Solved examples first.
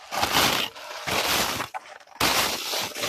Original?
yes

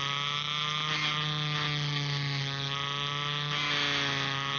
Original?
yes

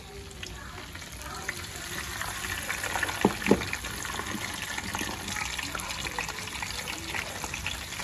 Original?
yes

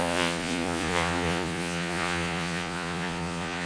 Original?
no